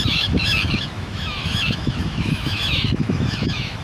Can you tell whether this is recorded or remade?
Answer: remade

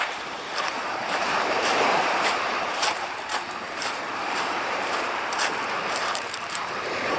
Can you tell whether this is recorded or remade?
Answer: remade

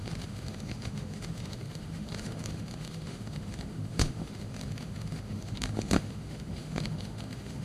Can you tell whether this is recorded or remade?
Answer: remade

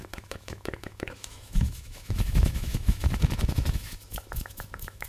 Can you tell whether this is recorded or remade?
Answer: remade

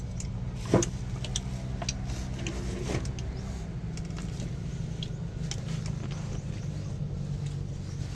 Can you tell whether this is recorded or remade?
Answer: recorded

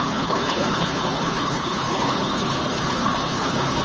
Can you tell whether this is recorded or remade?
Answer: remade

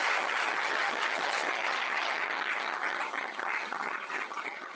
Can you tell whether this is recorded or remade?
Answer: remade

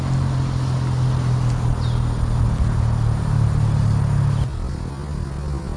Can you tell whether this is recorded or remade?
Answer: recorded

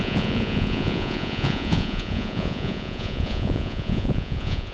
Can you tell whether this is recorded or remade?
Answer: remade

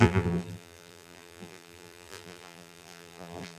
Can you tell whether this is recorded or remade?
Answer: remade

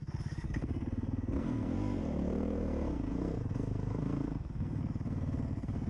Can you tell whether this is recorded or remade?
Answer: remade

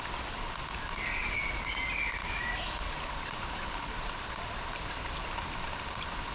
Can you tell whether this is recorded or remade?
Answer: recorded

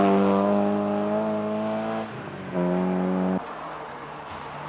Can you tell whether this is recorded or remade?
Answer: recorded